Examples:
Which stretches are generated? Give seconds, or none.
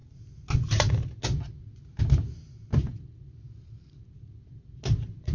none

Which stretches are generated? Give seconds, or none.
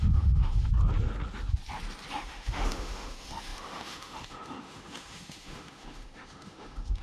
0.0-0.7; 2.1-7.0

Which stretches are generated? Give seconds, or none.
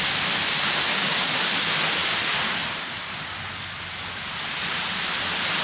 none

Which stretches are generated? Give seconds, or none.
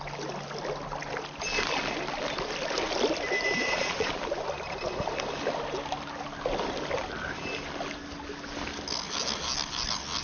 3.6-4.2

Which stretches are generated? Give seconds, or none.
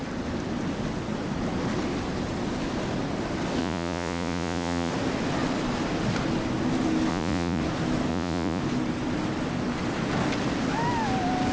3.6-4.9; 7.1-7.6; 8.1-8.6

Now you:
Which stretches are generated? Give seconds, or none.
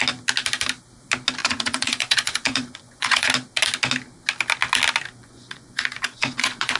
1.4-3.3; 5.2-6.8